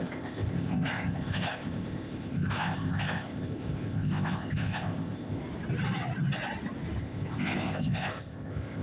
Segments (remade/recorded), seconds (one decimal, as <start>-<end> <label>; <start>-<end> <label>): 0.0-5.4 remade; 5.4-7.0 recorded; 7.0-8.8 remade